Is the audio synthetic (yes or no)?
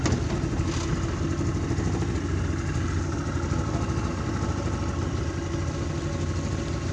no